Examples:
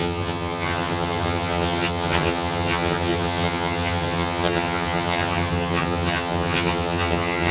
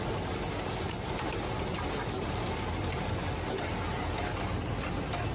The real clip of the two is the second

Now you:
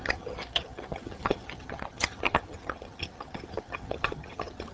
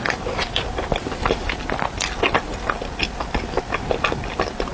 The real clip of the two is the second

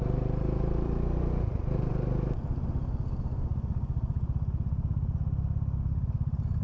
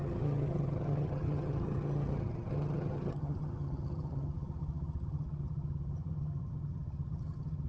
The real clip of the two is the first